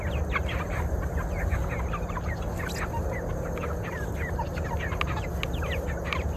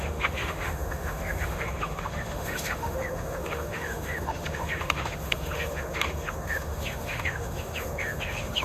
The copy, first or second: second